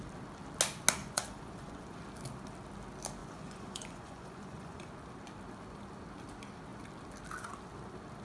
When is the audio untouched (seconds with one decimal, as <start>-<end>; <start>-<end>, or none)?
0.0-1.0; 2.0-3.2; 4.9-8.2